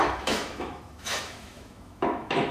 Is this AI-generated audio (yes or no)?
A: yes